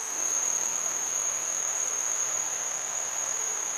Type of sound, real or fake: fake